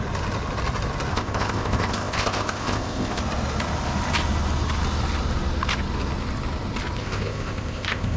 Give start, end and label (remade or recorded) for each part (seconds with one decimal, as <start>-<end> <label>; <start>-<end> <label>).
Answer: 0.0-1.1 recorded; 1.1-3.2 remade; 3.2-7.0 recorded; 7.0-8.2 remade